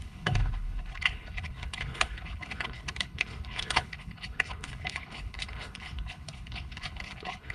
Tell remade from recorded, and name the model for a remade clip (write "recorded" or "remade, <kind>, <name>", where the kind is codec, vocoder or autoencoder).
remade, codec, HILCodec